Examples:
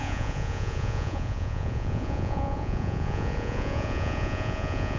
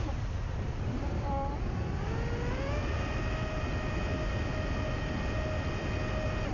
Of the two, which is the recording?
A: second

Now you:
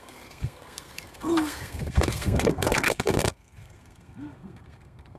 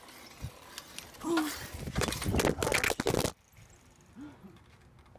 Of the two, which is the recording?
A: second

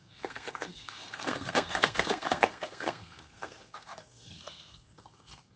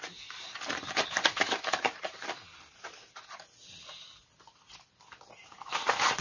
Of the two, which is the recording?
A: second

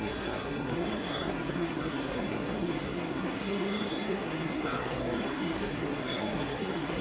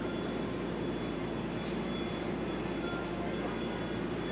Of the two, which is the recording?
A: second